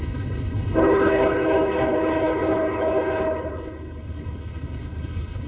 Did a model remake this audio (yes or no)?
yes